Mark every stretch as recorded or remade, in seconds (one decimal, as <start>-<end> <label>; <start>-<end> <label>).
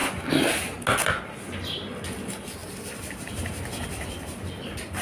0.0-2.6 recorded; 2.6-4.2 remade; 4.2-5.0 recorded